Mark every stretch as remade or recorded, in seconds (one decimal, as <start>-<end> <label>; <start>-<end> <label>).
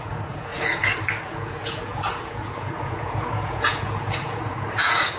0.0-0.5 remade; 0.5-1.3 recorded; 1.3-5.2 remade